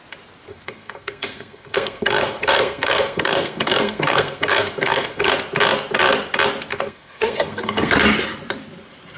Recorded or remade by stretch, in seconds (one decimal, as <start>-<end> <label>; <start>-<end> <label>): 0.0-0.5 recorded; 0.5-5.3 remade; 5.3-6.7 recorded; 6.7-7.9 remade; 7.9-9.2 recorded